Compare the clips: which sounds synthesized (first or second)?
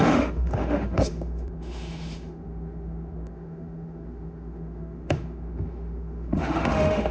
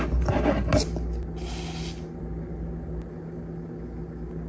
first